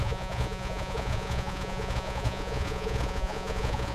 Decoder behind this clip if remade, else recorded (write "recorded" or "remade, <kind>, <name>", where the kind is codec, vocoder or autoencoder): remade, vocoder, Vocos